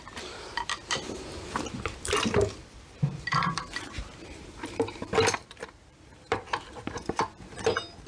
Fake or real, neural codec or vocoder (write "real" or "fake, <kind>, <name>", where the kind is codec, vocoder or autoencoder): fake, vocoder, BigVGAN v2